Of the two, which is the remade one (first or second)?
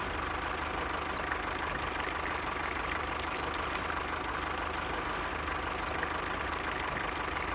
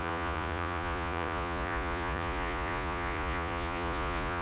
second